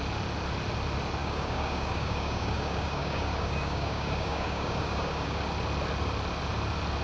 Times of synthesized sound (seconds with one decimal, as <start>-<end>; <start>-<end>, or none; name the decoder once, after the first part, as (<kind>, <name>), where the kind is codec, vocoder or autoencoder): 1.2-5.4 (codec, DAC)